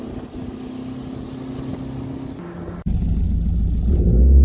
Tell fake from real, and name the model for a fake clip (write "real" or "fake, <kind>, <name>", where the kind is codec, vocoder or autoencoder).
real